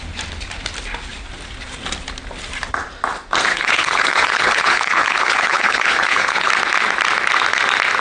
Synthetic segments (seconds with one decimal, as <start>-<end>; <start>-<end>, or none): 3.5-6.5